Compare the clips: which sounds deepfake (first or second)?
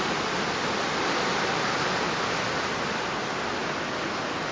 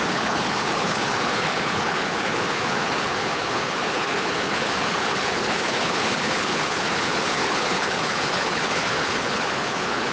second